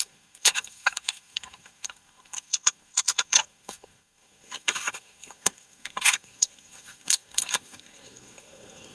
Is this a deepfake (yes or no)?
yes